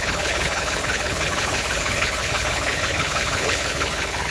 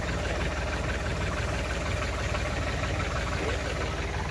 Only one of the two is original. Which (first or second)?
second